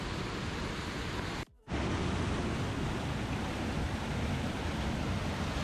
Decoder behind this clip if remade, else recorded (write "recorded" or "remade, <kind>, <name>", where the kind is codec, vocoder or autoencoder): recorded